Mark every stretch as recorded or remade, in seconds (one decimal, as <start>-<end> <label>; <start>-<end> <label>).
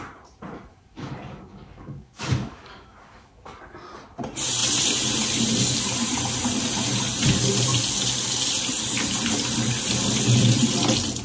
0.0-0.7 recorded; 0.7-3.6 remade; 3.6-11.2 recorded